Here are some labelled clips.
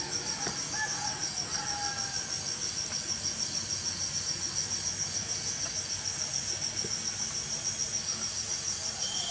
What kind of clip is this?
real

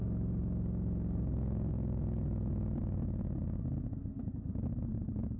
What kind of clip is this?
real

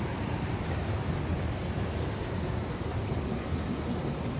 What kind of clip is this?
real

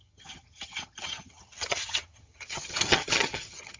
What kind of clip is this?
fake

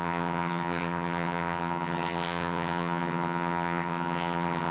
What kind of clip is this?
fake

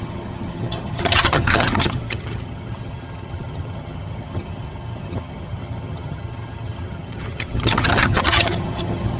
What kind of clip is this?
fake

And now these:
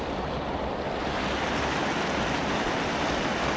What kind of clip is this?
real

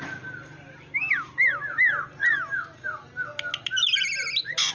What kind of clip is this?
real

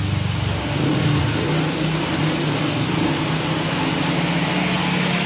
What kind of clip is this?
real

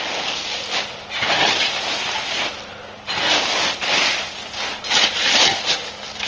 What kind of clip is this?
real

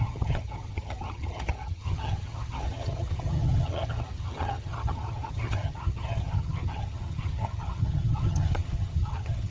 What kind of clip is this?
fake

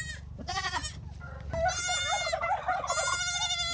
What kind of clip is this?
real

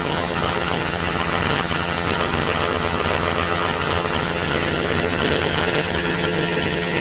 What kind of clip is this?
fake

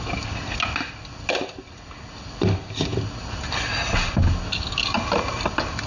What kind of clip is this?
real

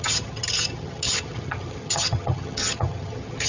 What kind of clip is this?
fake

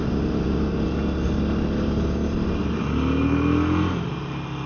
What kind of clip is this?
real